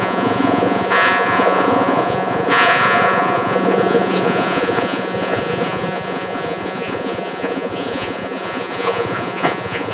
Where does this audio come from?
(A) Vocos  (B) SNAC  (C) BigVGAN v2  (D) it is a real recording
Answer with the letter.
A